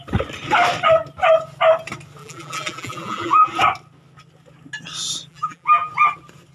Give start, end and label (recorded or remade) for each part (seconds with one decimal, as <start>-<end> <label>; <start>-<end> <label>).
0.0-2.2 recorded; 2.2-3.5 remade; 3.5-5.3 recorded; 5.3-5.9 remade; 5.9-6.5 recorded